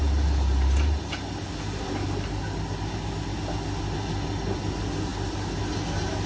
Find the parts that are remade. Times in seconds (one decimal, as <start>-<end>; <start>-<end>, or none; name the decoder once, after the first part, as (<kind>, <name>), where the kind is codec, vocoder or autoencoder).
none